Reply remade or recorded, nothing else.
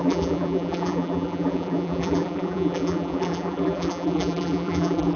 remade